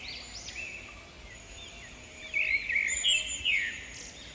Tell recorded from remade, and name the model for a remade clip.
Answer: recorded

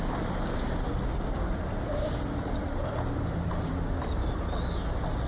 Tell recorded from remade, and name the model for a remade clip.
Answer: remade, vocoder, BigVGAN v2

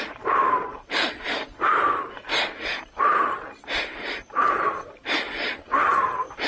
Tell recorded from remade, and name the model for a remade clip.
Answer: remade, vocoder, BigVGAN v2